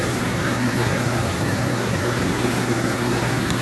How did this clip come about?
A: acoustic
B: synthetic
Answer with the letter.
B